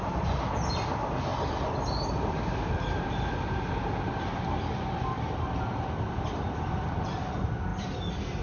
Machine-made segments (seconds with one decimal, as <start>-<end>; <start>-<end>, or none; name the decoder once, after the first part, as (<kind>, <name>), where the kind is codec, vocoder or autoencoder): 1.3-4.0 (vocoder, BigVGAN v2)